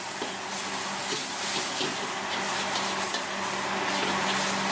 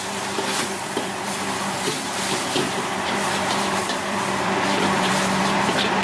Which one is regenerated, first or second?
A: second